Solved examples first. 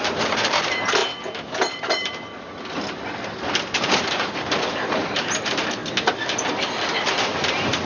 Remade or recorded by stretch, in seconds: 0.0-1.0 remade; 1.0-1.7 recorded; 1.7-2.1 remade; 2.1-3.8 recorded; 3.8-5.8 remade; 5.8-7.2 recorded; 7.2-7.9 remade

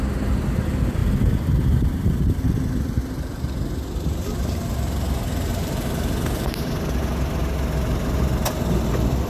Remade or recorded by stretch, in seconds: 0.0-1.0 recorded; 1.0-2.4 remade; 2.4-9.3 recorded

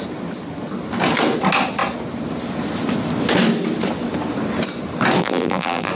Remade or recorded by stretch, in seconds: 0.0-5.2 recorded; 5.2-5.9 remade

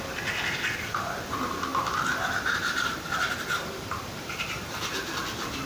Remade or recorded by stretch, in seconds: 0.0-1.7 recorded; 1.7-5.1 remade; 5.1-5.7 recorded

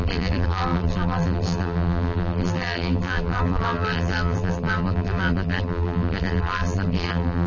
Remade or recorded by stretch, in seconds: 0.0-7.5 remade

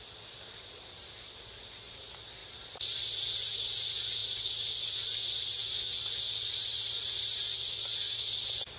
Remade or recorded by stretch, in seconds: 0.0-2.4 recorded; 2.4-3.7 remade; 3.7-8.8 recorded

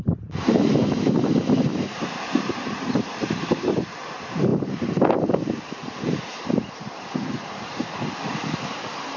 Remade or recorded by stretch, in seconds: 0.0-9.2 remade